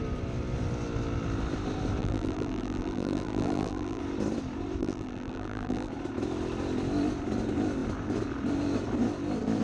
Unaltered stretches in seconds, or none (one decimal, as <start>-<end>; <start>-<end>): 0.0-2.0; 4.0-4.8; 5.9-9.6